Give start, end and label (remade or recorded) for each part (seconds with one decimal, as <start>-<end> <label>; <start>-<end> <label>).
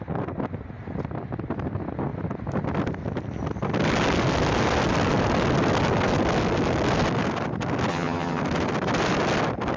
0.0-7.9 recorded; 7.9-8.4 remade; 8.4-9.8 recorded